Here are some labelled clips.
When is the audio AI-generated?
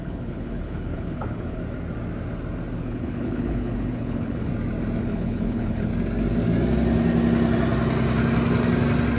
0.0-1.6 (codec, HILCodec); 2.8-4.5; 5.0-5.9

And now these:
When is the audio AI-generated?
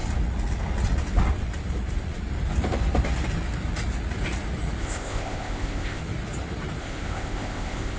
4.8-6.0 (codec, ZipCodec); 6.8-8.0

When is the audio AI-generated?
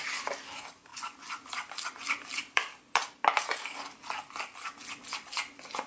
0.9-3.0 (vocoder, BigVGAN v2)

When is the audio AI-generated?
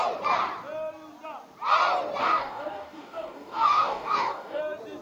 2.2-4.6 (codec, DAC)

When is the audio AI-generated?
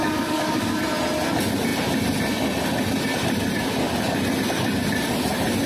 0.0-0.7 (codec, DAC)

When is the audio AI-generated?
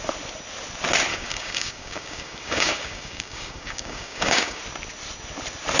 1.1-4.6 (codec, DAC)